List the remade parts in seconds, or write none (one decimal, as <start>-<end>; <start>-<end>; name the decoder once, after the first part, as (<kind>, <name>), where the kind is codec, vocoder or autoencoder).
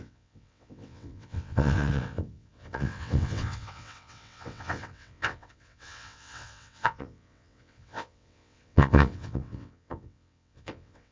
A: 0.0-11.1 (vocoder, WaveNeXt)